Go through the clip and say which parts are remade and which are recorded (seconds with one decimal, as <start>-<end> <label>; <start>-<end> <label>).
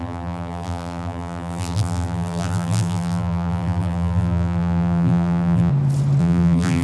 0.0-5.7 remade; 5.7-6.2 recorded; 6.2-6.8 remade